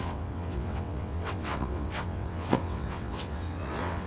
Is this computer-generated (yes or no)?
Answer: yes